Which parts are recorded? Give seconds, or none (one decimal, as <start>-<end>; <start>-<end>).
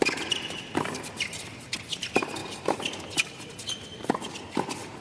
0.0-5.0